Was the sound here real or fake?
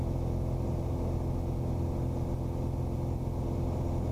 real